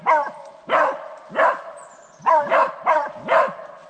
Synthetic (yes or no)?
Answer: no